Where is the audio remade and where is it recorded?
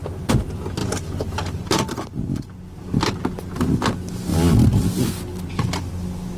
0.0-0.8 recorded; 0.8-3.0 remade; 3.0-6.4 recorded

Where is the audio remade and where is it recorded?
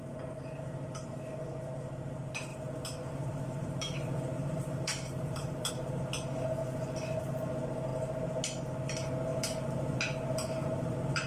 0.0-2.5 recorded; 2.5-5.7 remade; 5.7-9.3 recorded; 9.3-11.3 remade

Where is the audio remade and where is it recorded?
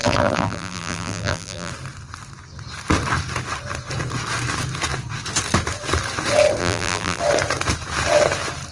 0.0-1.7 remade; 1.7-6.6 recorded; 6.6-7.2 remade; 7.2-8.7 recorded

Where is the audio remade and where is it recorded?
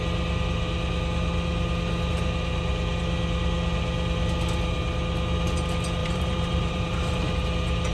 0.0-6.0 recorded; 6.0-7.3 remade; 7.3-7.9 recorded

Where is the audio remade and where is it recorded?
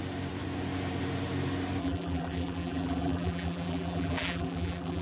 0.0-1.8 recorded; 1.8-5.0 remade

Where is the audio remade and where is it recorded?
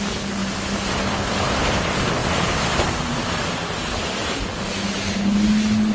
0.0-0.4 recorded; 0.4-1.6 remade; 1.6-2.2 recorded; 2.2-3.6 remade; 3.6-5.9 recorded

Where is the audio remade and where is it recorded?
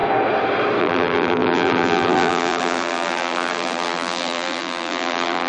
0.0-0.8 recorded; 0.8-5.5 remade